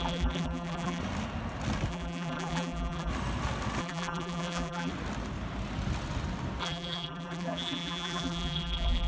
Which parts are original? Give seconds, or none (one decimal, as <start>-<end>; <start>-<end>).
1.0-1.9; 3.1-3.8; 4.9-6.6